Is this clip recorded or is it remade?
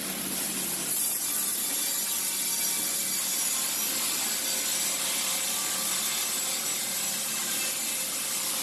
recorded